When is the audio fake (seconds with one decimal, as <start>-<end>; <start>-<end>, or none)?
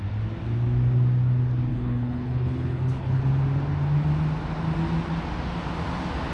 1.7-3.2